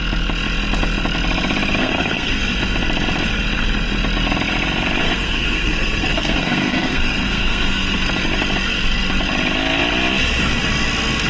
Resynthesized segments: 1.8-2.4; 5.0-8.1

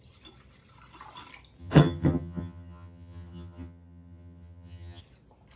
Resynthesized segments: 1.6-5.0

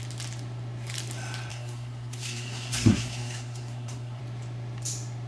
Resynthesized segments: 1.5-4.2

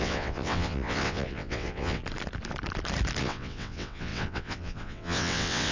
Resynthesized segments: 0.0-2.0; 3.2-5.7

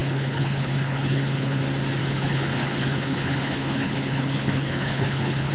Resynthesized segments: 0.0-1.6; 2.0-5.5

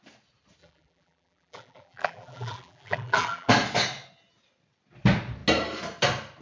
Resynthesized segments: 0.6-3.5

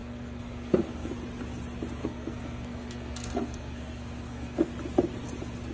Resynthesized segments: 0.0-1.1; 2.0-4.7

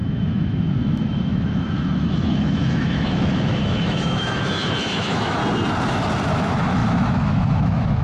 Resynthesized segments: 0.0-5.4; 6.3-8.0